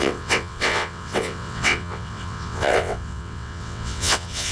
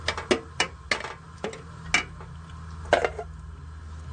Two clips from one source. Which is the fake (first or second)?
first